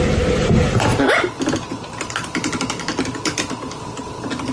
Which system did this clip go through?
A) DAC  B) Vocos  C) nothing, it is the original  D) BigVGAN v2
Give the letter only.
C